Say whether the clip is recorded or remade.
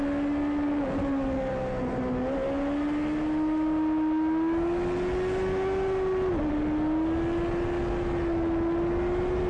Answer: recorded